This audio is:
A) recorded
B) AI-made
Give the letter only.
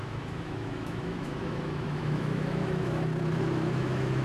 B